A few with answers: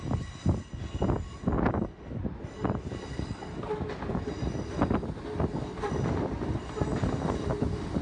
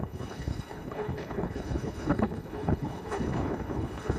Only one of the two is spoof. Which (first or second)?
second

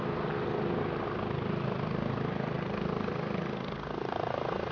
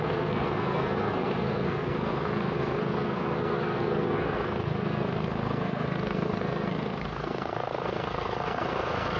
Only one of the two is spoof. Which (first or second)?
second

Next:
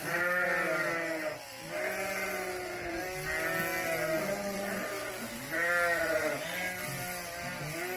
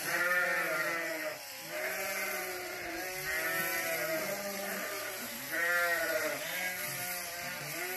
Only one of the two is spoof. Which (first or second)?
second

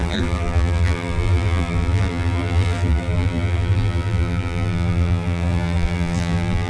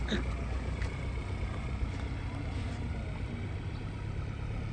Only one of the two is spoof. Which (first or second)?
first